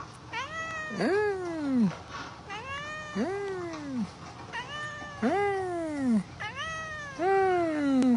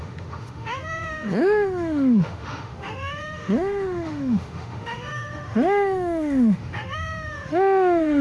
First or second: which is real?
first